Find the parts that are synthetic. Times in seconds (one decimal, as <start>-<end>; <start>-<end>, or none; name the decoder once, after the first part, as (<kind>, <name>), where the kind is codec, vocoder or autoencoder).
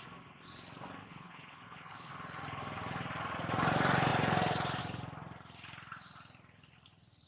1.0-2.1 (codec, HILCodec)